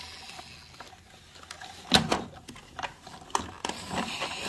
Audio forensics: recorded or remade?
recorded